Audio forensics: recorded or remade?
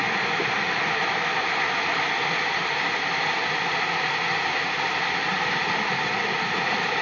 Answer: recorded